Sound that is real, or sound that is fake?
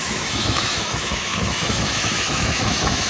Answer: fake